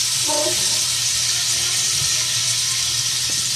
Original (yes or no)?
yes